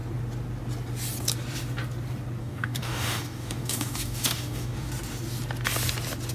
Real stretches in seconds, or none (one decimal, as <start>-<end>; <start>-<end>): 0.0-2.4; 4.9-6.3